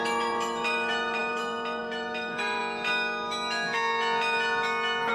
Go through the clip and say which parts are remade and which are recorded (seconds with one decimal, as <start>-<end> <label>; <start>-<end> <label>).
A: 0.0-2.6 remade; 2.6-5.1 recorded

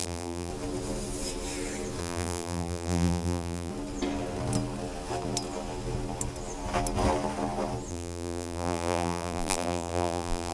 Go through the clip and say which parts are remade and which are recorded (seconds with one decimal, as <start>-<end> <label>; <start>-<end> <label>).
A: 0.0-0.5 remade; 0.5-2.0 recorded; 2.0-3.7 remade; 3.7-7.9 recorded; 7.9-10.5 remade

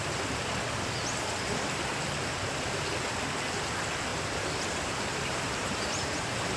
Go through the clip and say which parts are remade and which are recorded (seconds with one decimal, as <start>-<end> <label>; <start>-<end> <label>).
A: 0.0-4.1 recorded; 4.1-6.6 remade

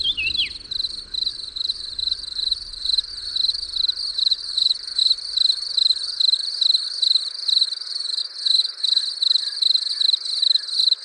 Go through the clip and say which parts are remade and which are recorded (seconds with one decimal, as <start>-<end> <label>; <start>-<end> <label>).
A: 0.0-1.3 recorded; 1.3-3.1 remade; 3.1-4.3 recorded; 4.3-5.0 remade; 5.0-11.0 recorded